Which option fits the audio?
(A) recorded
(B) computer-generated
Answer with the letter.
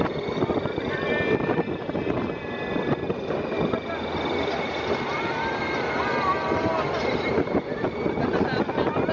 A